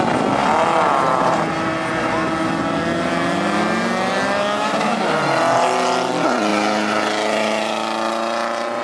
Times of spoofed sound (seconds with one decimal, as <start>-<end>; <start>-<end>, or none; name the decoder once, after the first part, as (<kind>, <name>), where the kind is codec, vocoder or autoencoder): 6.5-8.1 (vocoder, BigVGAN v2)